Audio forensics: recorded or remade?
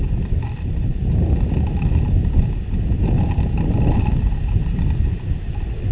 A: recorded